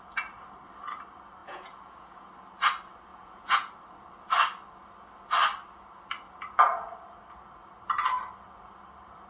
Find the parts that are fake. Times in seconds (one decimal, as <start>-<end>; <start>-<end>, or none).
1.4-2.3; 3.1-3.7